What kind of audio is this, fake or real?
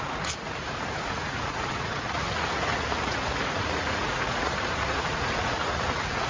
fake